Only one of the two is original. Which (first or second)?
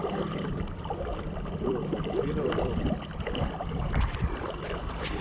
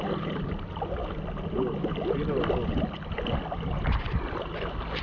second